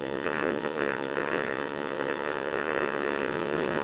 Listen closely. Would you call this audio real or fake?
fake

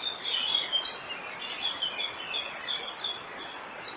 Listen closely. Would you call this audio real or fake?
real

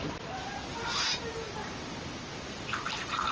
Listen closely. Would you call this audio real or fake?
real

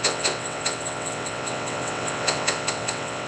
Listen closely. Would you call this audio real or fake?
fake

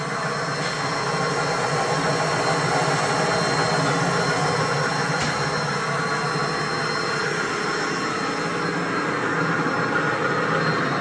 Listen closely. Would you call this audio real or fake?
real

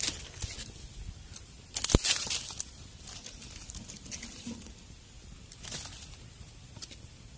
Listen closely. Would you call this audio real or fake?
real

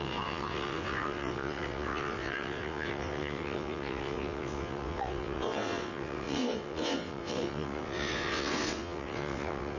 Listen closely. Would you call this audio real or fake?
fake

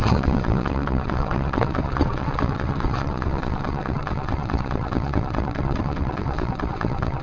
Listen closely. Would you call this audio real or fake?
fake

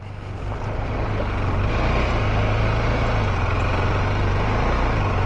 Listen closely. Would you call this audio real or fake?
real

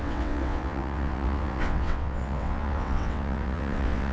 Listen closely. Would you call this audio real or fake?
fake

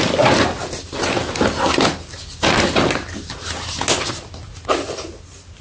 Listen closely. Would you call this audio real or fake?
real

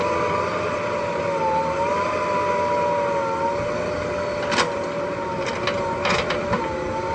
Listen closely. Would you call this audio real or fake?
real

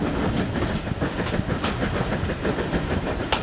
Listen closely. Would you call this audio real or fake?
real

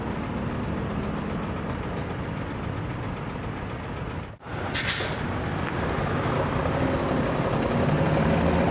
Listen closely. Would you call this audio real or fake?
real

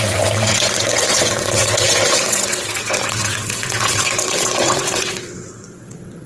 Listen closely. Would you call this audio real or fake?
fake